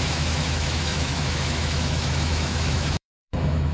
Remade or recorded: remade